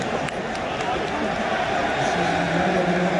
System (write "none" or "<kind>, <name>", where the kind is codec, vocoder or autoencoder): none